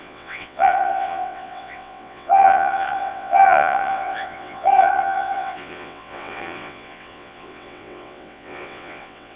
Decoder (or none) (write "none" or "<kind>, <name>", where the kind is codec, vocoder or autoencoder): vocoder, WaveNeXt